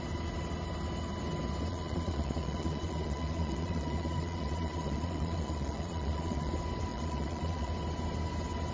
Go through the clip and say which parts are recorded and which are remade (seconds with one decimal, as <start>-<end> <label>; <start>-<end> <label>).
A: 0.0-1.7 recorded; 1.7-6.5 remade; 6.5-6.9 recorded; 6.9-7.7 remade; 7.7-8.7 recorded